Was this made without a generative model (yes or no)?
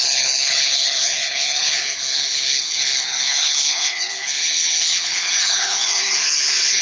no